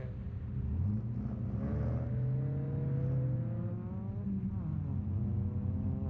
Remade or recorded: recorded